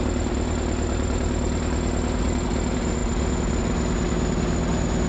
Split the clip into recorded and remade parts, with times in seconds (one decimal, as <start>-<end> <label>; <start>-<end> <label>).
0.0-5.1 recorded